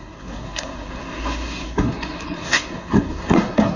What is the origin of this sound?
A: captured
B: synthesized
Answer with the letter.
B